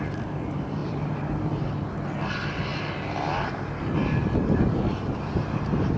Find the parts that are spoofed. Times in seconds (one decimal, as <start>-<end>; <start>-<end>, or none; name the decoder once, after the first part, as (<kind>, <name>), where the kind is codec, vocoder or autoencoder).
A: 0.8-1.6 (vocoder, BigVGAN v2)